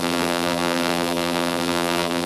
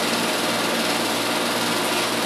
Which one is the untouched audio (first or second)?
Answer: second